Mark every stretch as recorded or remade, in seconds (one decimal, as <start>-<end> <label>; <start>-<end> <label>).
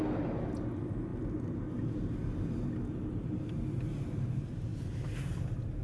0.0-5.8 recorded